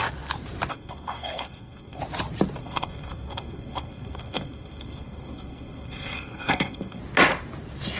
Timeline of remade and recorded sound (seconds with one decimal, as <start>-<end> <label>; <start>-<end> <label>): 0.0-0.7 recorded; 0.7-2.0 remade; 2.0-2.6 recorded; 2.6-7.0 remade; 7.0-8.0 recorded